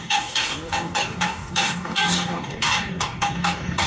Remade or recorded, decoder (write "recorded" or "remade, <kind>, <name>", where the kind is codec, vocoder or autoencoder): remade, codec, DAC